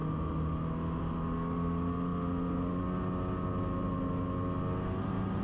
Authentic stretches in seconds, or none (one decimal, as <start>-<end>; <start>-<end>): 0.0-5.4